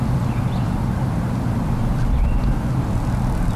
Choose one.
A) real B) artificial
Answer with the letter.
A